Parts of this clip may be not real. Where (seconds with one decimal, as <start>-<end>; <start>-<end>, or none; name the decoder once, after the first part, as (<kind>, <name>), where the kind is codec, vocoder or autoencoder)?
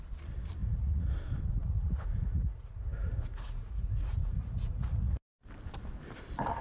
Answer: 0.6-1.1 (vocoder, Vocos); 1.6-5.2